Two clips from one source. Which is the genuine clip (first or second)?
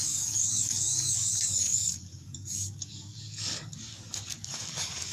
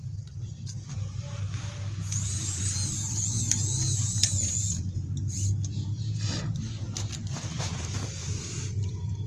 second